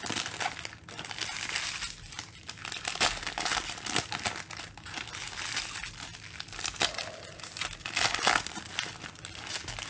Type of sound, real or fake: real